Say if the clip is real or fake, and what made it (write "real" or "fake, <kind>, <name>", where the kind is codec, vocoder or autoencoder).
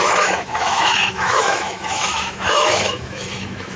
fake, autoencoder, DAC-VAE